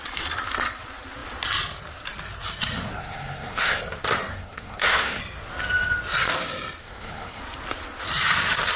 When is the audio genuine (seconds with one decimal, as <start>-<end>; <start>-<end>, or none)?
0.0-2.9; 3.8-4.3; 5.2-6.8; 7.4-8.8